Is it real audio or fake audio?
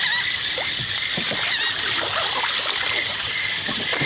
real